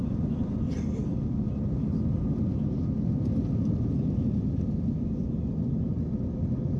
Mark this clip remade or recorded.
recorded